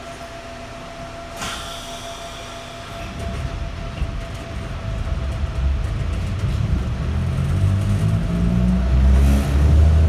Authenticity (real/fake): real